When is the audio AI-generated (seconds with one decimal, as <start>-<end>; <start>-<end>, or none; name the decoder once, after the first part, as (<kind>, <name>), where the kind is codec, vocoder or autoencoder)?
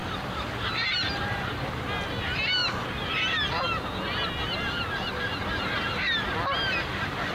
0.0-1.7 (vocoder, BigVGAN v2)